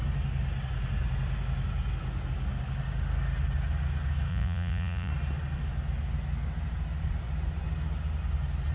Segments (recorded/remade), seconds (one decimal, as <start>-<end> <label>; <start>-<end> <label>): 0.0-4.3 recorded; 4.3-5.1 remade; 5.1-8.7 recorded

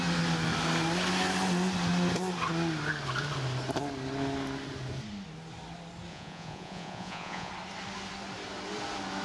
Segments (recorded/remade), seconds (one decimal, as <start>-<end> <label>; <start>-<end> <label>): 0.0-6.1 recorded; 6.1-7.5 remade; 7.5-9.2 recorded

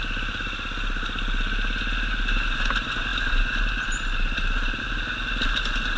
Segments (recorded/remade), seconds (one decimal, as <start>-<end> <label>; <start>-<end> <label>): 0.0-6.0 recorded

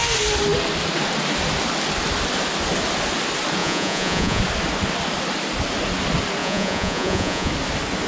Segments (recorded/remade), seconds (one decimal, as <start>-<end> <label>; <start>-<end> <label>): 0.0-3.6 recorded; 3.6-4.4 remade; 4.4-6.4 recorded; 6.4-7.5 remade; 7.5-8.1 recorded

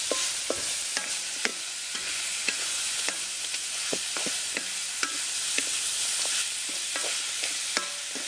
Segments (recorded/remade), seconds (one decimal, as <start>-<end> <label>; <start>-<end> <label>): 0.0-1.5 recorded; 1.5-4.0 remade; 4.0-8.3 recorded

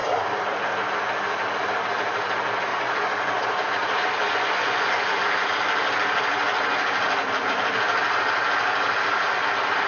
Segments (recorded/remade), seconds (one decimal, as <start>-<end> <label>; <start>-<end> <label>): 0.0-2.7 recorded; 2.7-4.9 remade; 4.9-9.9 recorded

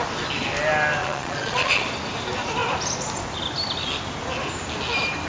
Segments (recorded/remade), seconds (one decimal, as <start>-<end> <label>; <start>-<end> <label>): 0.0-1.0 recorded; 1.0-1.8 remade; 1.8-5.3 recorded

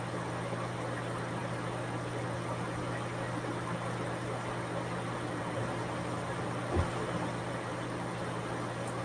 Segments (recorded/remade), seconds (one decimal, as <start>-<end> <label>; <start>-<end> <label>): 0.0-9.0 recorded